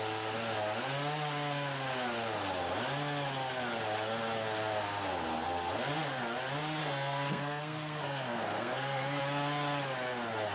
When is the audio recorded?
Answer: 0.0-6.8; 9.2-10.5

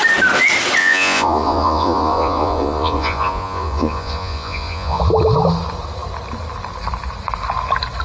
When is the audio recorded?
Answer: 0.0-0.8; 5.0-8.0

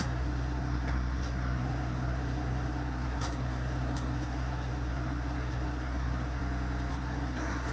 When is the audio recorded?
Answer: 6.4-6.9

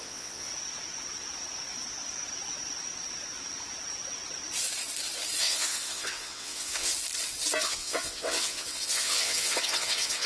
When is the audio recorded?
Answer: 0.5-5.4; 6.9-7.6

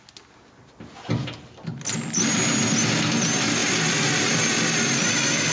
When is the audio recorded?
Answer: 0.0-5.5

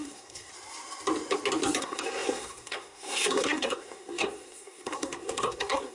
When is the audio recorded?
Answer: 0.5-1.8